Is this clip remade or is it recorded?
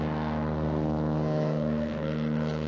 remade